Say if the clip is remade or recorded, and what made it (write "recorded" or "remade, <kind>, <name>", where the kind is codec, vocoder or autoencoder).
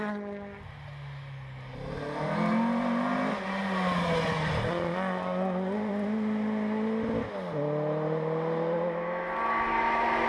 recorded